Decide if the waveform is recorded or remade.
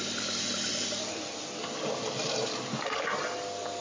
recorded